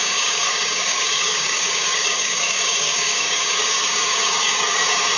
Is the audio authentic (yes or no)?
no